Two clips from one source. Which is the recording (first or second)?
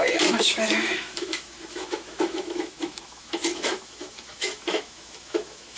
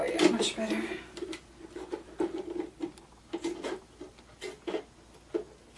second